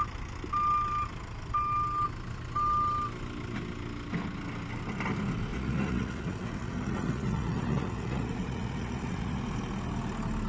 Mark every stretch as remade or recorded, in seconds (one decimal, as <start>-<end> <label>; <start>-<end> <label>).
0.0-5.5 recorded; 5.5-9.4 remade; 9.4-10.5 recorded